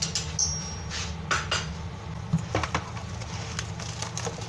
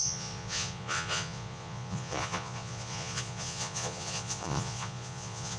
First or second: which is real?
first